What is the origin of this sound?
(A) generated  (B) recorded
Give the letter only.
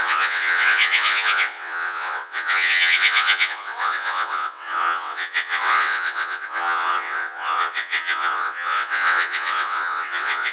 A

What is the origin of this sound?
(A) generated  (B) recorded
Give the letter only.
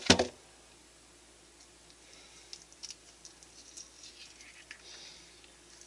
B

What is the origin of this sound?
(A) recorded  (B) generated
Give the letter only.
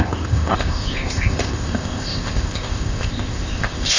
B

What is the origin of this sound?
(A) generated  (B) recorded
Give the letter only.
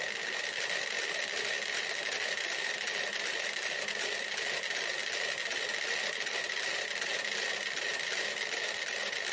B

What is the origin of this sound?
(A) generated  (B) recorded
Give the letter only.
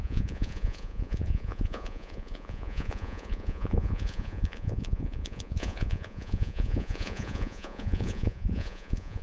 A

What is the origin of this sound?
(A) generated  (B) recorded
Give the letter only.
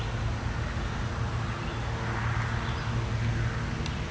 B